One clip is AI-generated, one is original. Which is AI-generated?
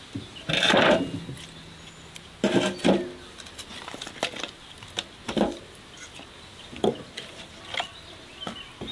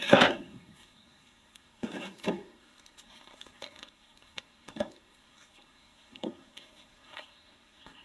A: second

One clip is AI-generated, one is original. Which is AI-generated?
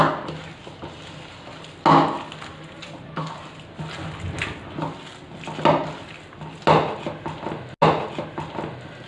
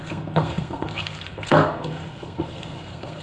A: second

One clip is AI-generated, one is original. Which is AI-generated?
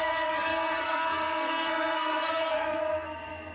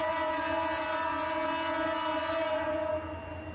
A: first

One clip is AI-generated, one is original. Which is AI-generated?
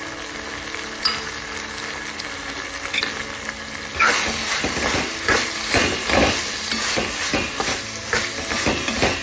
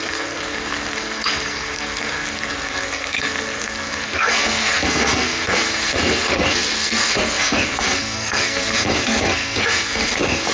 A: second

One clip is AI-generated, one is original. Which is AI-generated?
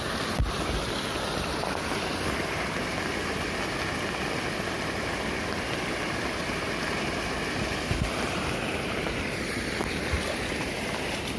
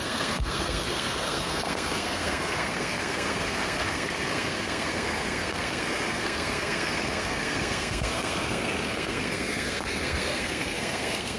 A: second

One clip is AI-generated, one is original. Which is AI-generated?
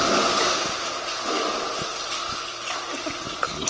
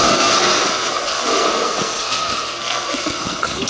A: second